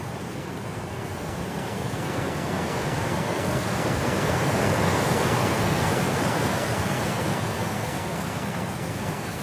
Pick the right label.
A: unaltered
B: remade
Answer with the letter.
B